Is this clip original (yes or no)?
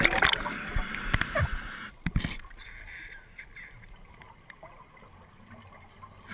yes